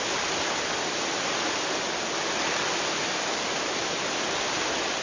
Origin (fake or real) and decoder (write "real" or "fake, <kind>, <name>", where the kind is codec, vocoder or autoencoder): real